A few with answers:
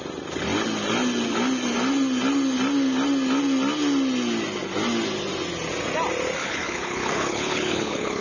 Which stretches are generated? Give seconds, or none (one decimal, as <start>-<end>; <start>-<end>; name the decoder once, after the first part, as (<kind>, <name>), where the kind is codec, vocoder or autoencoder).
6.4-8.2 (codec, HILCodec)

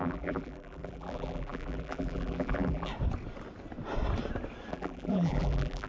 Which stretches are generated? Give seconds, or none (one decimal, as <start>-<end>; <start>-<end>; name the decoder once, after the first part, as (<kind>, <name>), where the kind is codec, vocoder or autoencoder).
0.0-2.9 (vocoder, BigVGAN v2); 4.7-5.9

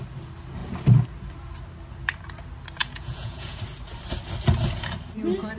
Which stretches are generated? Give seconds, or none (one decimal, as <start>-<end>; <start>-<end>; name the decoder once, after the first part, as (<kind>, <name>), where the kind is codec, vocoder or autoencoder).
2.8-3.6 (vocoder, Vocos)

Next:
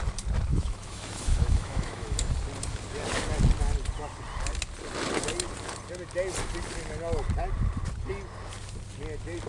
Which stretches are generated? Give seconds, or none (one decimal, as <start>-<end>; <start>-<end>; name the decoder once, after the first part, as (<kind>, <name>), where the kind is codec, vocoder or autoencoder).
0.5-2.3 (autoencoder, DAC-VAE)

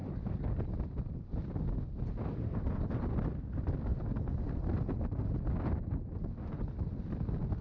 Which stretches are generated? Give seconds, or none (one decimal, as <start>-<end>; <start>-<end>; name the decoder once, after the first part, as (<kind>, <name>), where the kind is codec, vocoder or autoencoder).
none